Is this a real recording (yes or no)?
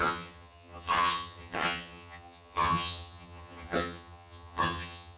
no